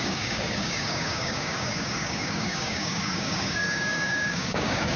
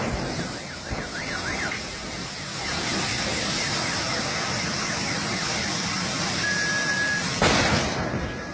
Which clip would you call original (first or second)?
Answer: second